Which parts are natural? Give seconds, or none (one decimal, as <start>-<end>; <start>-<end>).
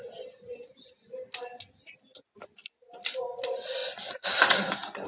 0.0-3.8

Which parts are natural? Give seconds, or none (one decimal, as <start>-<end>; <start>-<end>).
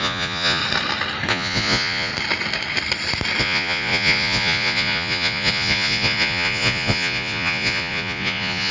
0.6-1.3; 2.1-3.4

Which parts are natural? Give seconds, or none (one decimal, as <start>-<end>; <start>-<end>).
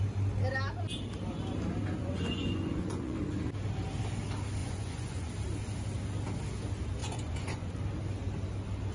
0.0-2.0; 3.2-4.6; 5.3-7.0; 7.7-8.9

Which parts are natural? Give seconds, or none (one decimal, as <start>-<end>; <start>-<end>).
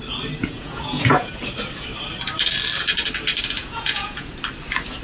0.0-0.4; 1.3-3.6; 4.3-5.0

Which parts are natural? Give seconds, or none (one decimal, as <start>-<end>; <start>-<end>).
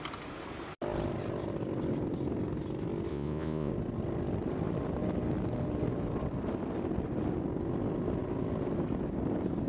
0.0-3.1; 3.7-9.7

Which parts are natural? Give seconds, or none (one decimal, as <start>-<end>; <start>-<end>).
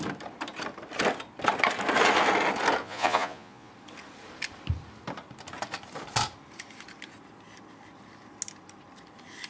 0.0-2.8; 3.7-9.5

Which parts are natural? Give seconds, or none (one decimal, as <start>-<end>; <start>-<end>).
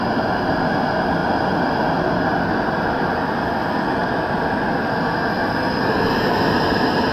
0.0-7.1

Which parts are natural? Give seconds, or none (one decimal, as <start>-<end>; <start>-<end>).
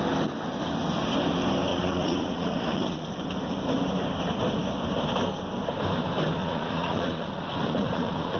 0.0-1.7; 3.1-6.4